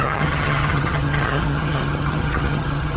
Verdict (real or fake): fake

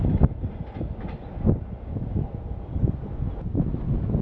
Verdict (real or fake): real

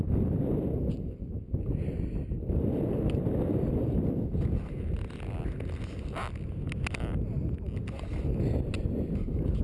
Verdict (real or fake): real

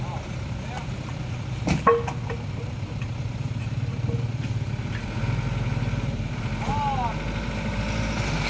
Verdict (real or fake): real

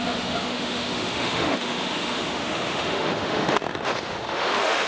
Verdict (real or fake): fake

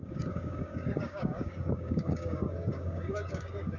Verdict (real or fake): fake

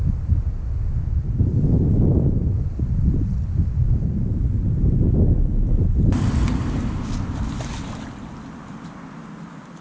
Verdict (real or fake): real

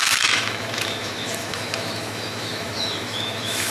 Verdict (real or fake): fake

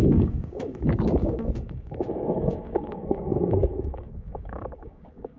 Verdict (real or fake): fake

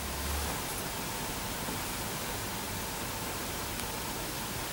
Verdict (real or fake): real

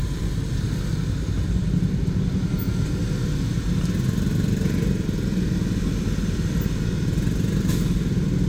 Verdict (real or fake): real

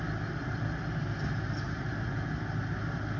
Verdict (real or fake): real